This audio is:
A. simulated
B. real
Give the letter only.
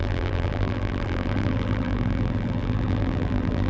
A